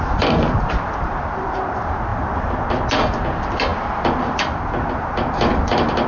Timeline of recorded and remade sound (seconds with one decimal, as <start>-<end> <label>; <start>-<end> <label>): 0.0-6.1 recorded

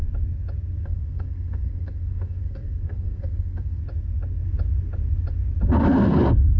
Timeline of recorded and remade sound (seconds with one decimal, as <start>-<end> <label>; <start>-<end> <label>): 0.0-0.8 recorded; 0.8-3.8 remade; 3.8-6.6 recorded